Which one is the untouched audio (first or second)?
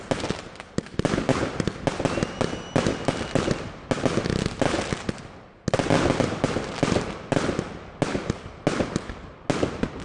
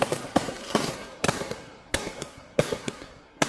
first